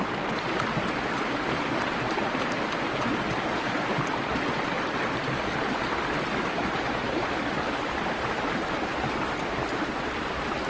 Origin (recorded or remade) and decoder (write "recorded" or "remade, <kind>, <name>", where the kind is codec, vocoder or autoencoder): remade, vocoder, BigVGAN v2